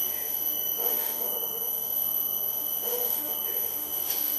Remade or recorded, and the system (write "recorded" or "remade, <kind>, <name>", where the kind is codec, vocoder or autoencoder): remade, autoencoder, DAC-VAE